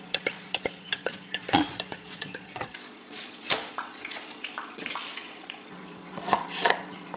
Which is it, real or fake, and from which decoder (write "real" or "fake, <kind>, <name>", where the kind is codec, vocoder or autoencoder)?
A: fake, vocoder, Vocos